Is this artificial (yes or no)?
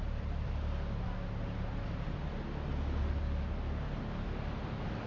no